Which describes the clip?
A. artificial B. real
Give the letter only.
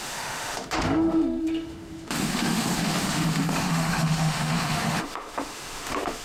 A